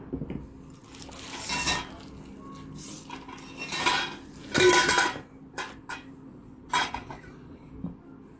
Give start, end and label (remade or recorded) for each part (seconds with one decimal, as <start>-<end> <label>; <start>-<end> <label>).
0.0-6.3 recorded; 6.3-7.7 remade; 7.7-8.4 recorded